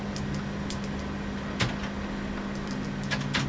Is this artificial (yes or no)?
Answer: no